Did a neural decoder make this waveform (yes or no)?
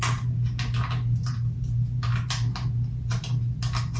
no